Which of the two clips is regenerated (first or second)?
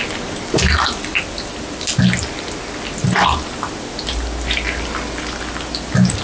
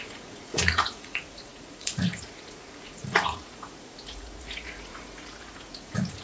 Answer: second